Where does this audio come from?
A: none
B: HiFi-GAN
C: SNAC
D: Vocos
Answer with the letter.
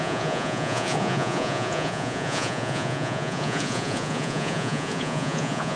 D